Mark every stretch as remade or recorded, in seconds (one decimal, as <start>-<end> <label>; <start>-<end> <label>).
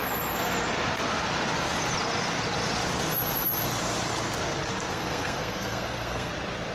0.0-4.9 recorded; 4.9-6.3 remade; 6.3-6.7 recorded